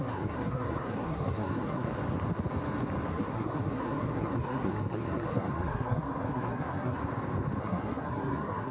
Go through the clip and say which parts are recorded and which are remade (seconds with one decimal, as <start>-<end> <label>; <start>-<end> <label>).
0.0-1.9 remade; 1.9-3.1 recorded; 3.1-7.0 remade; 7.0-7.6 recorded; 7.6-8.7 remade